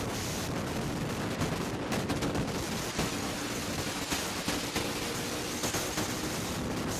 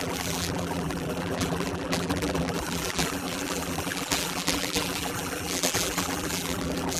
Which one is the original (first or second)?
first